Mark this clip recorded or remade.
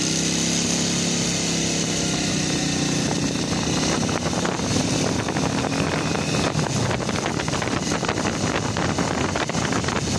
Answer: recorded